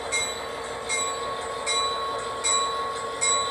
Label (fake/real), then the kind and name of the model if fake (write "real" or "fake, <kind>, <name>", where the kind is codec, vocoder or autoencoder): real